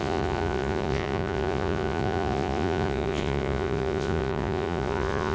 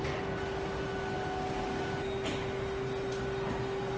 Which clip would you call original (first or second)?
second